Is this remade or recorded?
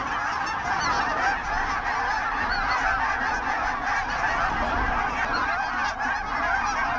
recorded